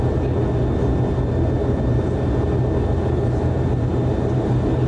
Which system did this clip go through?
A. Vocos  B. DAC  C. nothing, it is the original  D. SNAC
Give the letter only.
C